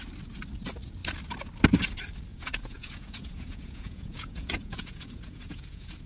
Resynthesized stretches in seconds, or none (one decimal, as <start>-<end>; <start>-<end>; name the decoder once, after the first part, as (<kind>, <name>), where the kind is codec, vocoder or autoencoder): 2.3-6.1 (vocoder, Vocos)